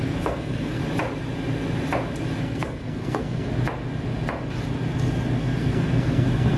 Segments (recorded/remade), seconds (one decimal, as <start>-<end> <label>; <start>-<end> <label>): 0.0-0.8 remade; 0.8-2.4 recorded; 2.4-3.5 remade; 3.5-5.4 recorded; 5.4-6.6 remade